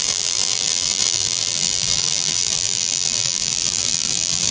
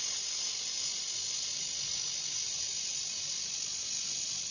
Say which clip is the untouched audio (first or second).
second